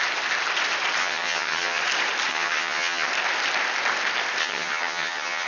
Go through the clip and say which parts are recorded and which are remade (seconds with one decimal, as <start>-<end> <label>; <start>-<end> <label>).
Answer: 0.0-1.0 recorded; 1.0-1.8 remade; 1.8-2.3 recorded; 2.3-3.1 remade; 3.1-4.4 recorded; 4.4-5.5 remade